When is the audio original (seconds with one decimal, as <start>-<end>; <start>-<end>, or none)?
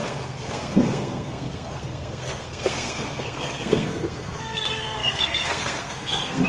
none